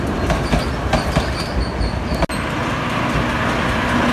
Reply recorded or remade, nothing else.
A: recorded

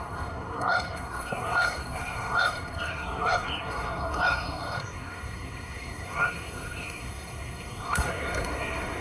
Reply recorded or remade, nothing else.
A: remade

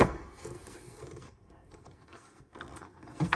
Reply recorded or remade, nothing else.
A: remade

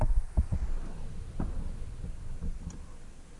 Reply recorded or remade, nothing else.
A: recorded